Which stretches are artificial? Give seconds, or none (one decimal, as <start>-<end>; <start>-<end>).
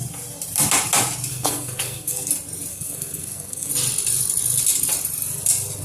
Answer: 1.3-2.3; 2.7-3.7